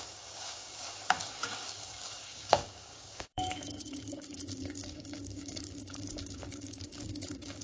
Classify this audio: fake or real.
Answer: fake